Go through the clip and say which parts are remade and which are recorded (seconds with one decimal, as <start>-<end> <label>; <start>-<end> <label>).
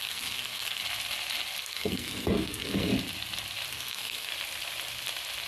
0.0-0.8 remade; 0.8-1.6 recorded; 1.6-2.9 remade; 2.9-3.7 recorded; 3.7-4.3 remade; 4.3-5.5 recorded